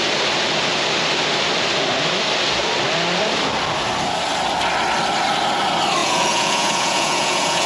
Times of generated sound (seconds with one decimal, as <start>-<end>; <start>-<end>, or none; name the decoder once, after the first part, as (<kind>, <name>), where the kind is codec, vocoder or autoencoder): 6.0-7.7 (vocoder, Vocos)